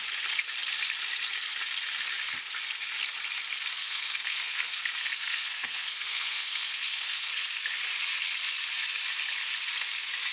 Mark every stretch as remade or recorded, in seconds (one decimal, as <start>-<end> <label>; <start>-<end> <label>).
0.0-3.8 recorded; 3.8-7.3 remade; 7.3-10.3 recorded